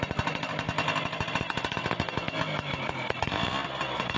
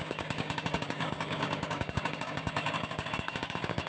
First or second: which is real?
first